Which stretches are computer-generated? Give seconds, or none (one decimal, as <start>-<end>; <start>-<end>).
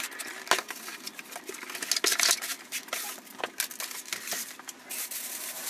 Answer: 2.5-4.8